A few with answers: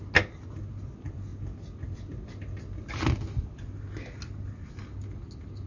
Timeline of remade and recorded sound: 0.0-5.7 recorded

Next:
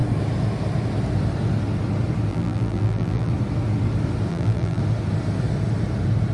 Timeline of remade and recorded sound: 0.0-2.3 recorded; 2.3-3.3 remade; 3.3-4.3 recorded; 4.3-4.8 remade; 4.8-6.3 recorded